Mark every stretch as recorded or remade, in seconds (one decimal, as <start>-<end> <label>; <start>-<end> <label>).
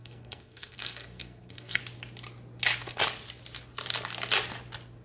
0.0-1.8 remade; 1.8-5.0 recorded